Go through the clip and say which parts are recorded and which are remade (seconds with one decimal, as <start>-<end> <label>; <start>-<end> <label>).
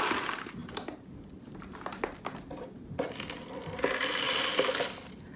0.0-5.4 recorded